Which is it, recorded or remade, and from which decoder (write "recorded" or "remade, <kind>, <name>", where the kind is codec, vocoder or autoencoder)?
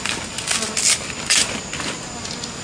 recorded